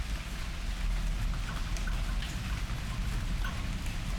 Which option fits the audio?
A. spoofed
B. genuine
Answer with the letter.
B